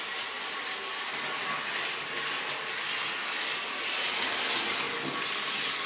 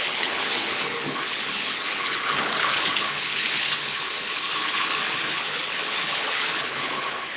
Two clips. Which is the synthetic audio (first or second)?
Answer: second